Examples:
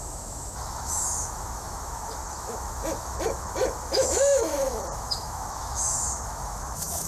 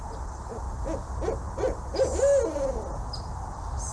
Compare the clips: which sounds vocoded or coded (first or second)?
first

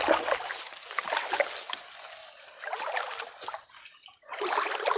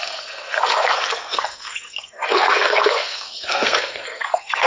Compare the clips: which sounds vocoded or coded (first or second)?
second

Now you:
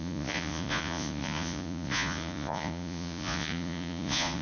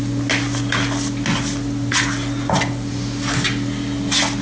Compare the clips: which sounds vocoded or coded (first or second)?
first